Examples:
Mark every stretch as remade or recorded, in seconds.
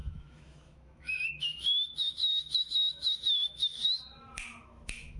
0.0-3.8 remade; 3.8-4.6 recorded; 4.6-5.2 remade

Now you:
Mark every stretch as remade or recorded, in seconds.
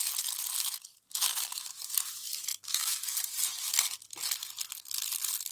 0.0-1.3 recorded; 1.3-1.8 remade; 1.8-2.5 recorded; 2.5-3.0 remade; 3.0-5.5 recorded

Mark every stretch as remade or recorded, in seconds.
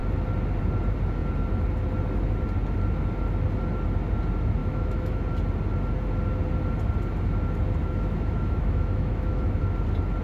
0.0-4.6 recorded; 4.6-5.2 remade; 5.2-7.8 recorded; 7.8-9.6 remade; 9.6-10.2 recorded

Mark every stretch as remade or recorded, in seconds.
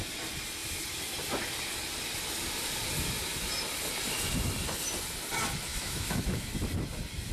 0.0-5.7 recorded; 5.7-6.5 remade; 6.5-7.3 recorded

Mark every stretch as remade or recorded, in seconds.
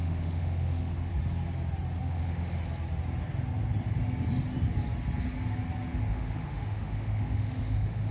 0.0-1.1 remade; 1.1-2.0 recorded; 2.0-2.6 remade; 2.6-6.1 recorded; 6.1-8.1 remade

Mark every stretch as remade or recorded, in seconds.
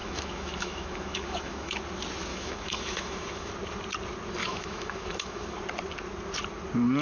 0.0-1.8 remade; 1.8-2.3 recorded; 2.3-3.5 remade; 3.5-4.4 recorded; 4.4-5.6 remade; 5.6-7.0 recorded